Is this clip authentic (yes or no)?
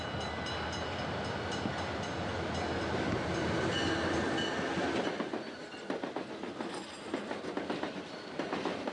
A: yes